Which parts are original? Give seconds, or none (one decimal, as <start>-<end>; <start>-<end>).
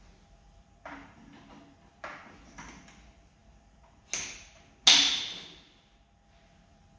0.0-7.0